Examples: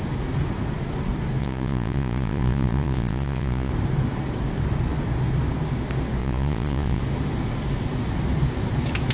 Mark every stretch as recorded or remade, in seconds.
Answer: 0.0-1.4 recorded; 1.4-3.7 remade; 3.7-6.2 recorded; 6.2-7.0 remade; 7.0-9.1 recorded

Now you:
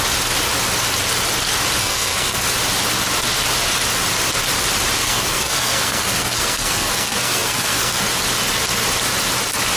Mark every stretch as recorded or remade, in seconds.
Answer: 0.0-1.8 recorded; 1.8-2.4 remade; 2.4-5.0 recorded; 5.0-8.0 remade; 8.0-9.8 recorded

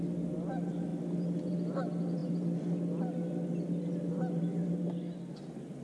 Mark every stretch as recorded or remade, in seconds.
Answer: 0.0-5.8 recorded

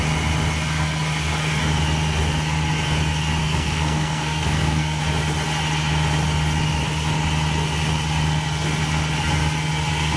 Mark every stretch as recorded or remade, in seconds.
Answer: 0.0-3.4 recorded; 3.4-5.0 remade; 5.0-10.2 recorded

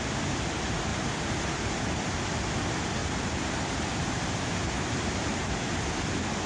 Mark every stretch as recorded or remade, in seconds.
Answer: 0.0-0.9 recorded; 0.9-1.4 remade; 1.4-3.0 recorded; 3.0-5.2 remade; 5.2-6.5 recorded